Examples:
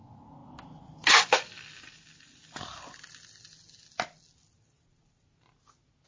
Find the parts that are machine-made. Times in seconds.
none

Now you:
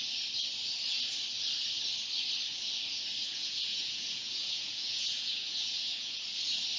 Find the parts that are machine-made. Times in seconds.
3.3-6.2 (vocoder, Vocos)

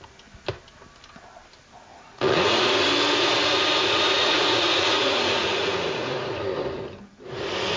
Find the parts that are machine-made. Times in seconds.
1.9-2.9 (vocoder, Vocos); 4.2-6.3

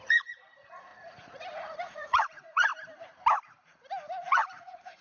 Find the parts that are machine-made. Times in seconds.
0.0-0.9 (vocoder, Vocos); 1.6-2.7; 4.2-5.0

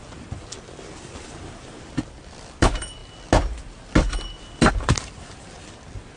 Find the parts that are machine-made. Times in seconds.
none

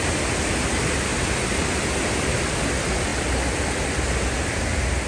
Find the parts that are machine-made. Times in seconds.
none

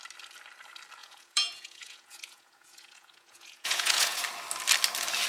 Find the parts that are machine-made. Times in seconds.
1.0-4.2 (vocoder, Vocos)